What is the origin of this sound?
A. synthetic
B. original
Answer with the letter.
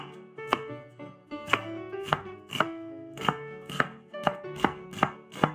A